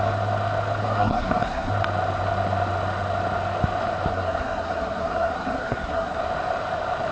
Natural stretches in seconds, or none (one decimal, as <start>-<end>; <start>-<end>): 0.0-0.8; 1.7-4.1; 6.2-7.1